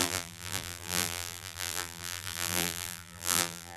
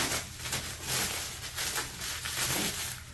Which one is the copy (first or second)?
first